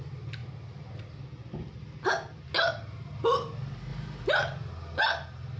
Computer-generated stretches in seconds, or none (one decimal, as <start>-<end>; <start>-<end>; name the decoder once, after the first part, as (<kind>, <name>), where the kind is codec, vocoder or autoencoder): none